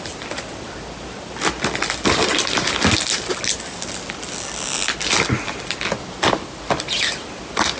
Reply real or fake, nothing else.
real